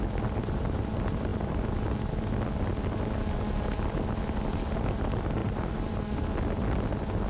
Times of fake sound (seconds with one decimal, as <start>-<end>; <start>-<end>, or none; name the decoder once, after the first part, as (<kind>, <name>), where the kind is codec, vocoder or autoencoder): 5.4-6.0 (vocoder, BigVGAN v2)